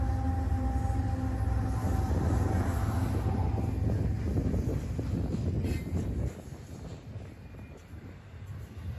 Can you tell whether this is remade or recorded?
recorded